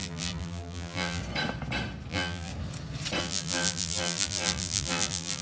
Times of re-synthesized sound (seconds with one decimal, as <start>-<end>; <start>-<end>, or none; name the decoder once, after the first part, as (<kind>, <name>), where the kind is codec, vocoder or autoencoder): 0.0-1.2 (vocoder, BigVGAN v2); 2.1-2.5; 3.2-5.4